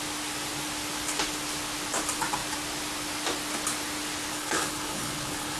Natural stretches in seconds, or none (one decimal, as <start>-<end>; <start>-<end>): 0.0-4.3